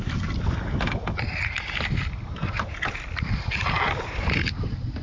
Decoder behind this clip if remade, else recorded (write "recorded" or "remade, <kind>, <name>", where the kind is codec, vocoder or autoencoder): recorded